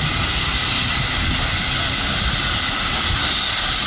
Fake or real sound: real